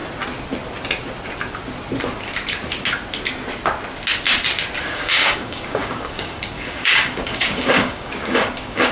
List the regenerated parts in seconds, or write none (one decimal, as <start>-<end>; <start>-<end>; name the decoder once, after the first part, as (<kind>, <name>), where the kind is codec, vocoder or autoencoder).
4.8-8.9 (codec, DAC)